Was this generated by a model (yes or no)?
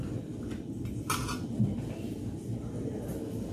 no